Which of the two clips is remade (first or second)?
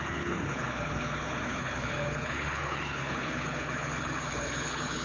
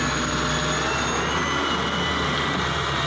first